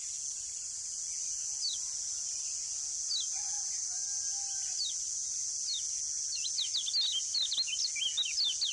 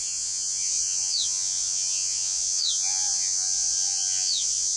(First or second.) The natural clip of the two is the first